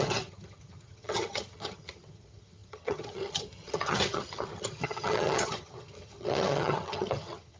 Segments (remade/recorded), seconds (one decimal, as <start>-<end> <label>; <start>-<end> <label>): 0.0-7.6 remade

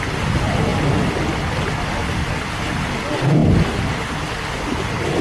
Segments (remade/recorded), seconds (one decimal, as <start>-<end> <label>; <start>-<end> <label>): 0.0-5.2 recorded

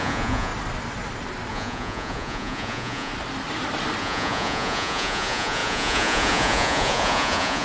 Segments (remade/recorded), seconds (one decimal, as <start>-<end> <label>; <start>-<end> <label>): 0.0-0.5 remade; 0.5-1.5 recorded; 1.5-3.1 remade; 3.1-4.0 recorded; 4.0-7.6 remade

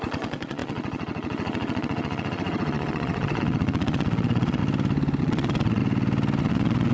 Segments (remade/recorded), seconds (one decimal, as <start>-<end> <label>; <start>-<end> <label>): 0.0-4.6 remade; 4.6-5.2 recorded; 5.2-5.8 remade; 5.8-6.4 recorded; 6.4-6.9 remade

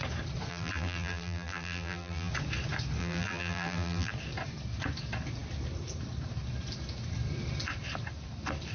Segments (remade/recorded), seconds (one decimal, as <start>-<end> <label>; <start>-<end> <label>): 0.0-0.5 recorded; 0.5-2.3 remade; 2.3-3.0 recorded; 3.0-4.1 remade; 4.1-8.7 recorded